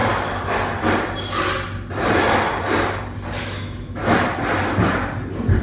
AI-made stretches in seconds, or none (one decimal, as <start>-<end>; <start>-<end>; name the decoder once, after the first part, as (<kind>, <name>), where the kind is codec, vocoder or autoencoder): 3.4-4.0 (autoencoder, DAC-VAE)

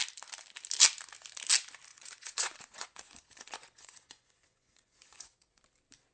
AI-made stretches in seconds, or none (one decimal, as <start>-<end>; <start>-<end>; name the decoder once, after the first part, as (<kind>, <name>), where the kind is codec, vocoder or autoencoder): 1.9-5.6 (vocoder, Vocos)

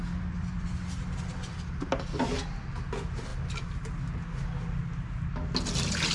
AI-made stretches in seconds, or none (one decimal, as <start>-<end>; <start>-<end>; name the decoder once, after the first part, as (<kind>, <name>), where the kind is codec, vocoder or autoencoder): none

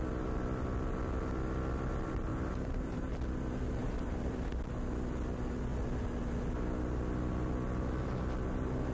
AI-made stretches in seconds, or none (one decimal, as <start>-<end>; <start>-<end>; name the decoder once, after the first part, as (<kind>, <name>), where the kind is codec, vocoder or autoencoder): 2.3-3.1 (vocoder, BigVGAN v2); 3.8-4.5

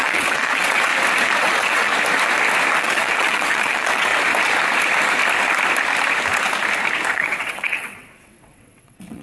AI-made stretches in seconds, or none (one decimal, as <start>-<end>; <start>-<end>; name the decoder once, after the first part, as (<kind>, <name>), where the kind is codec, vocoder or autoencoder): 0.0-0.9 (vocoder, WaveNeXt); 1.4-1.9; 2.8-4.1; 7.1-9.2

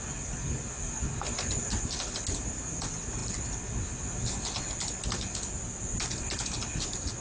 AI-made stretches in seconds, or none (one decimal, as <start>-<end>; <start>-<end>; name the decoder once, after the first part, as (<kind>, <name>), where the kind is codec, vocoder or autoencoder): none

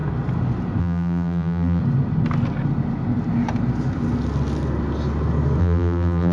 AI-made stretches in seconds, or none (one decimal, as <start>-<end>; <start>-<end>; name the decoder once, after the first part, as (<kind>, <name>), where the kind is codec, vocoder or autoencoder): 0.8-1.8 (vocoder, BigVGAN v2); 5.6-6.3